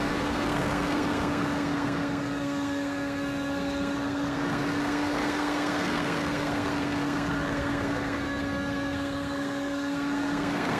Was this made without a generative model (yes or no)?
no